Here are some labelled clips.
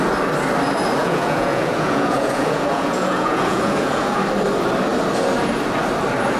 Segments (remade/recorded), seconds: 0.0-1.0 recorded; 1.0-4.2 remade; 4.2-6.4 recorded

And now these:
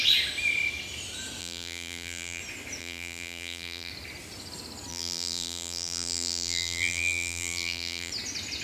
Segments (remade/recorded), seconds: 0.0-1.4 recorded; 1.4-2.4 remade; 2.4-2.8 recorded; 2.8-3.9 remade; 3.9-4.9 recorded; 4.9-8.1 remade; 8.1-8.6 recorded

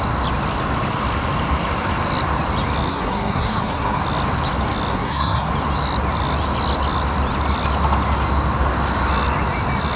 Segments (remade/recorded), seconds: 0.0-2.9 recorded; 2.9-4.0 remade; 4.0-4.9 recorded; 4.9-5.5 remade; 5.5-10.0 recorded

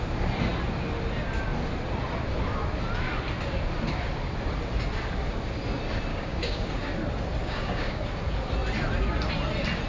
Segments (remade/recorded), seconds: 0.0-6.1 recorded; 6.1-6.7 remade; 6.7-7.4 recorded; 7.4-8.0 remade; 8.0-9.9 recorded

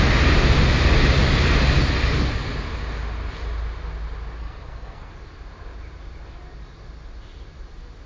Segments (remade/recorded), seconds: 0.0-4.4 recorded; 4.4-5.1 remade; 5.1-8.1 recorded

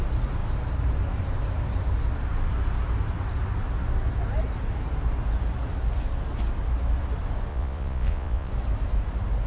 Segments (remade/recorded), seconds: 0.0-7.5 recorded; 7.5-8.5 remade; 8.5-9.5 recorded